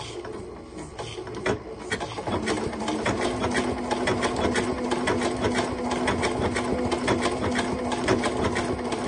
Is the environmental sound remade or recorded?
recorded